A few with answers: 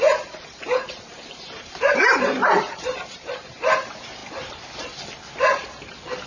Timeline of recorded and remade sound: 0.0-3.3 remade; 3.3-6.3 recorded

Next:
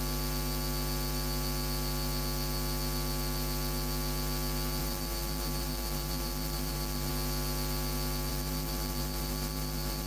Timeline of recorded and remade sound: 0.0-4.8 recorded; 4.8-7.1 remade; 7.1-8.3 recorded; 8.3-10.1 remade

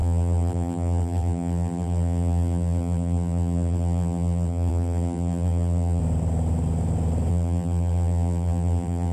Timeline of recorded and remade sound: 0.0-6.0 remade; 6.0-7.3 recorded; 7.3-9.1 remade

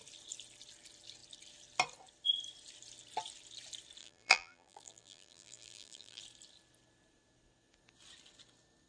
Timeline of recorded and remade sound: 0.0-4.0 recorded; 4.0-6.2 remade; 6.2-8.9 recorded

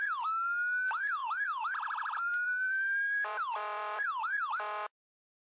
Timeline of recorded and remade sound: 0.0-1.2 recorded; 1.2-4.5 remade; 4.5-5.5 recorded